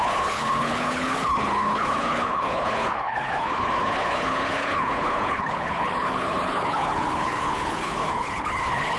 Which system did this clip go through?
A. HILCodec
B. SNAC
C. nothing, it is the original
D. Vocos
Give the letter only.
A